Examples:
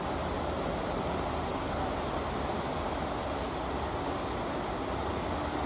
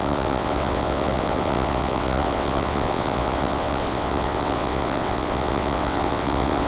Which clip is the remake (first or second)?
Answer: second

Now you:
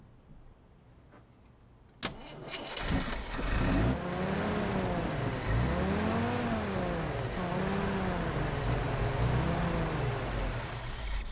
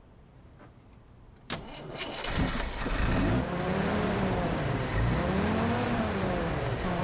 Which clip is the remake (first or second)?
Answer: second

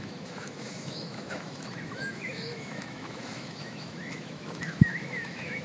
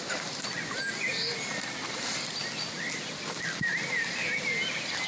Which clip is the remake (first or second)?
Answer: first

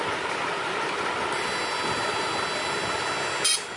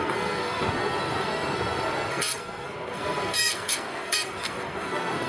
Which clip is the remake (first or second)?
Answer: second